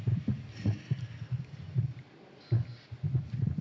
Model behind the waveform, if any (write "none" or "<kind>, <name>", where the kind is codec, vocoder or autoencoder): vocoder, BigVGAN v2